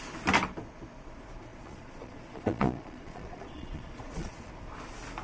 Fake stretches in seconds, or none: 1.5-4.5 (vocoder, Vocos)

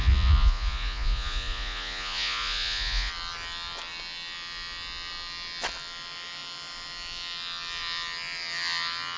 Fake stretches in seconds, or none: 0.0-3.1 (vocoder, Vocos)